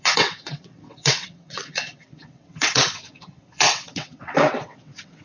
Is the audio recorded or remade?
remade